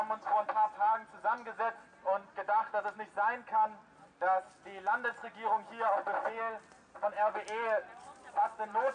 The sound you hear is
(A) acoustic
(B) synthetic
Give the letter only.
A